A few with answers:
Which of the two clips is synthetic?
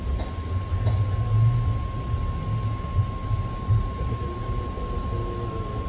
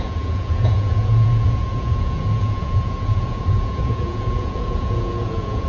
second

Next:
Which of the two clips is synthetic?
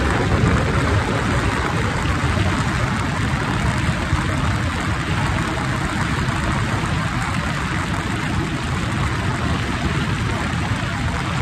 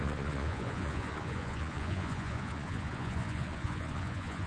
second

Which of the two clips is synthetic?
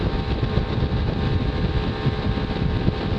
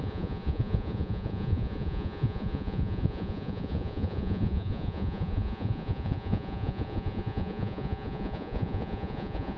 second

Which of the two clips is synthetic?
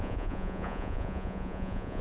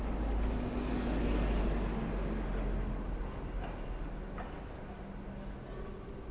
first